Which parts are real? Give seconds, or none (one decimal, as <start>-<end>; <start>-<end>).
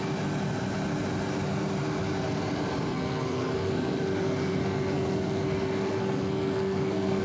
0.0-2.9